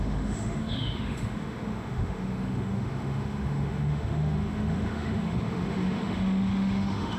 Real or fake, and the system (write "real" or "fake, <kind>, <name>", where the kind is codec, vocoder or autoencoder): fake, autoencoder, DAC-VAE